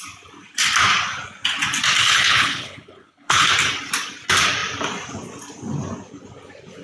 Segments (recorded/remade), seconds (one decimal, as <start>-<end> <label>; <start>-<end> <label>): 0.0-2.0 recorded; 2.0-3.5 remade; 3.5-6.8 recorded